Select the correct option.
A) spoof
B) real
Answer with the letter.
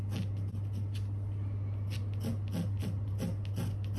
B